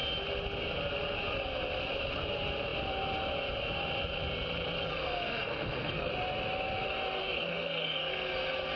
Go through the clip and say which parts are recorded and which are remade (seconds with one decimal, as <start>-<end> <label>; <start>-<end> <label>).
0.0-5.0 recorded; 5.0-6.1 remade; 6.1-7.2 recorded; 7.2-8.3 remade; 8.3-8.8 recorded